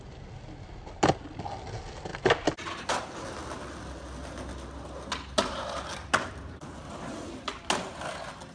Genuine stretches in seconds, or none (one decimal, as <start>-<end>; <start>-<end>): 0.0-8.5